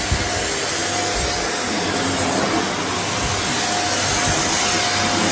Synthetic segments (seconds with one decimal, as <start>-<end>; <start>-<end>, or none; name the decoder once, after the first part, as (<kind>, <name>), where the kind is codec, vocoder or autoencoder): none